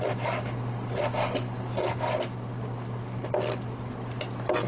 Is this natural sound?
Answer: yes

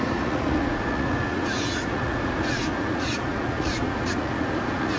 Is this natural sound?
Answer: no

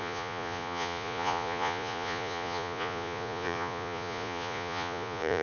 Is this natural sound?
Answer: no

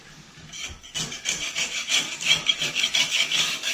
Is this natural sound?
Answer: no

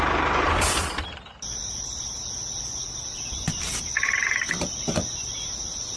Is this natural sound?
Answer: yes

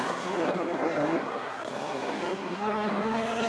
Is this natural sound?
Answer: no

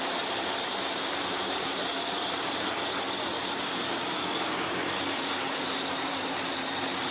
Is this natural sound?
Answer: no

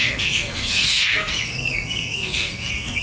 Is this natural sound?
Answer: no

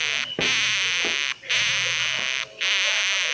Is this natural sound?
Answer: yes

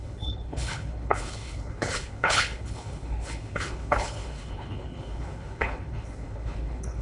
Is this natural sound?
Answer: no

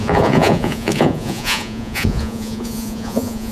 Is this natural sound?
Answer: no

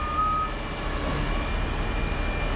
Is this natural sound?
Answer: yes